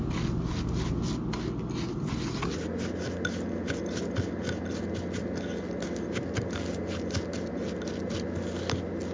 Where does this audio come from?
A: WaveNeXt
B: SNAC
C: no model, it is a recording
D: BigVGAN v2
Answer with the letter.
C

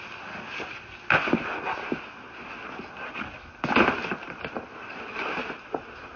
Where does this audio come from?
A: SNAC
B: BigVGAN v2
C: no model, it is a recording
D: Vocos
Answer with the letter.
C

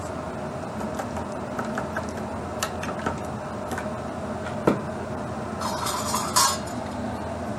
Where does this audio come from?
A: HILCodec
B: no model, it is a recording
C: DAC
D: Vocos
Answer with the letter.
B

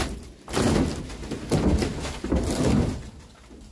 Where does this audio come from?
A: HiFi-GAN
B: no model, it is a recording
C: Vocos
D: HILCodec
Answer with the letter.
B